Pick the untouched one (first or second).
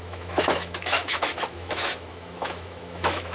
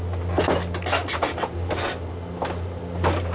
second